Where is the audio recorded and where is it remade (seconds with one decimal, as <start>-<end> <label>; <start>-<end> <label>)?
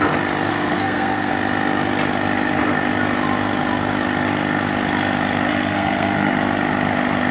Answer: 0.0-0.5 recorded; 0.5-1.3 remade; 1.3-5.5 recorded; 5.5-6.3 remade; 6.3-7.3 recorded